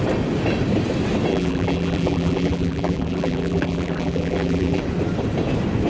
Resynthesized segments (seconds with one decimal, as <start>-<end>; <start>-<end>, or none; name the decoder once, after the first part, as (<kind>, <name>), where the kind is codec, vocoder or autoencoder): 1.3-4.8 (vocoder, BigVGAN v2)